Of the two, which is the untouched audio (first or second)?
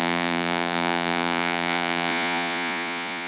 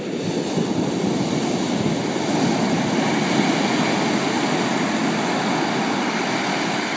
second